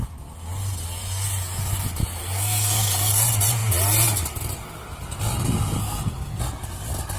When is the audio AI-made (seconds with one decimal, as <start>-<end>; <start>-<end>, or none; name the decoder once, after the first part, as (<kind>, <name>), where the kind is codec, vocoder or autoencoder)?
2.2-3.1 (codec, SNAC); 5.8-6.4